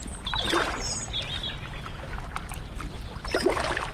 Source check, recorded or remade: recorded